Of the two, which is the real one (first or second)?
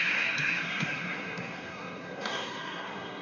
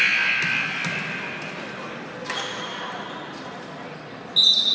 second